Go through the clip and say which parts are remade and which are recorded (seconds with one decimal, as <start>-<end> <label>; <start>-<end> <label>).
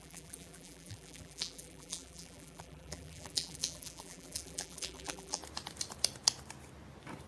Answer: 0.0-5.4 remade; 5.4-7.3 recorded